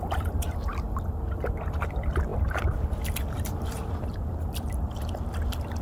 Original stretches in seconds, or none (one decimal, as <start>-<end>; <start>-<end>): 0.7-1.6